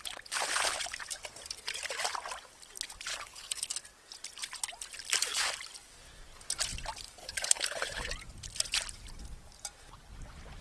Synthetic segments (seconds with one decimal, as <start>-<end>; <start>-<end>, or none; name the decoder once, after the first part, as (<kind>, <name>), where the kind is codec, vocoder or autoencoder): 3.1-3.7 (codec, HILCodec); 7.2-8.1